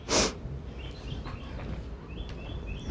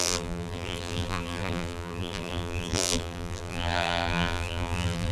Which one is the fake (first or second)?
second